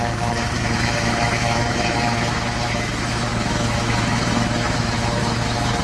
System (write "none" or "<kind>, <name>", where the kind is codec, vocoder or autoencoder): autoencoder, DAC-VAE